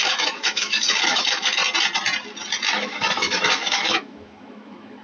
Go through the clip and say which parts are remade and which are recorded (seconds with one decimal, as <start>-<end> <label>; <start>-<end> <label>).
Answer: 0.0-1.6 remade; 1.6-2.7 recorded; 2.7-5.0 remade